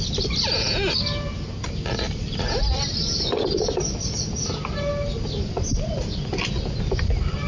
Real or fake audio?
real